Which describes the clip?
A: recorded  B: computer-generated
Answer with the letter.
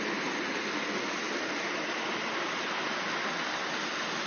A